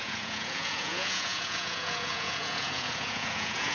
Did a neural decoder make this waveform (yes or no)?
yes